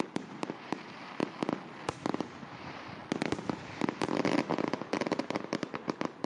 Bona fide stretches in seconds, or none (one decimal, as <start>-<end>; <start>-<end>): 1.2-2.2; 3.0-5.5